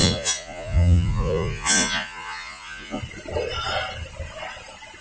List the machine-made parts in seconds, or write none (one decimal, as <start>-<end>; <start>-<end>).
0.0-3.0